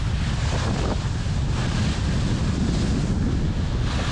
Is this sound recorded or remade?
recorded